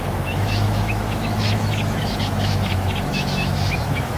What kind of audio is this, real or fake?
fake